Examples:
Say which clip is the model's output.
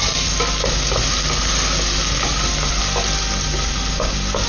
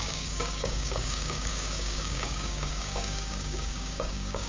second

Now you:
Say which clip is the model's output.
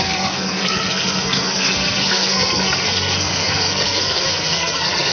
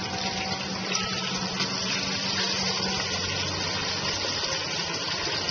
first